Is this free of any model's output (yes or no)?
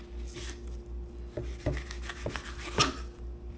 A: yes